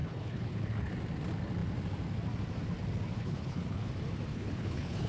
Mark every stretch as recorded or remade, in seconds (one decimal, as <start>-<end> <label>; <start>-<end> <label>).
0.0-0.9 remade; 0.9-3.1 recorded; 3.1-3.9 remade; 3.9-4.3 recorded; 4.3-5.1 remade